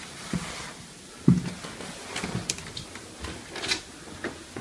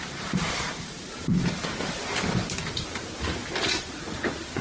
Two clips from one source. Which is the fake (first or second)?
second